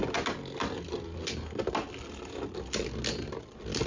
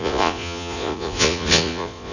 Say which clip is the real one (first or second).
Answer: first